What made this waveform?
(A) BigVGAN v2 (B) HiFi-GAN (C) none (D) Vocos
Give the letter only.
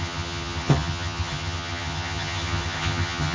B